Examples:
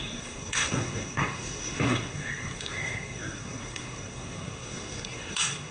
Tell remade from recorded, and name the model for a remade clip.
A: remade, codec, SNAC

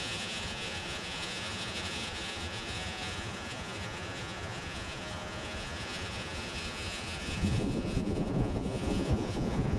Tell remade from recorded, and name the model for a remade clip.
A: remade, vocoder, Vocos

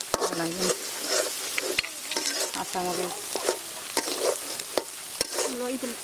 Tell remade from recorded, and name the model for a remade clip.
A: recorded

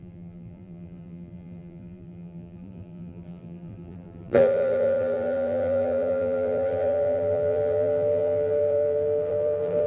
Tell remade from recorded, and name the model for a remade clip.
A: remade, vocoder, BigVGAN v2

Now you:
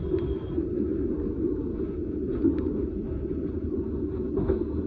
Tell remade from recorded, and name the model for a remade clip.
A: recorded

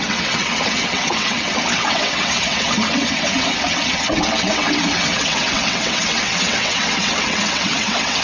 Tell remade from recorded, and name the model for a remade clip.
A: remade, vocoder, WaveNeXt